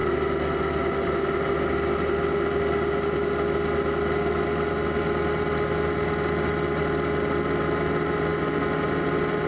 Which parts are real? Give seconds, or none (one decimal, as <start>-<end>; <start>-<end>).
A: 0.0-9.5